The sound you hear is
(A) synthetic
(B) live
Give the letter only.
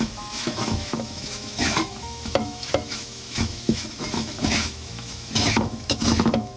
A